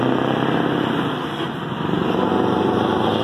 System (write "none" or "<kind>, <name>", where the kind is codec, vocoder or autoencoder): vocoder, BigVGAN v2